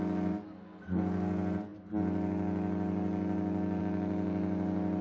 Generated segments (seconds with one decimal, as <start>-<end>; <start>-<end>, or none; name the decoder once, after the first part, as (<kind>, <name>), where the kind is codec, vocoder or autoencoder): none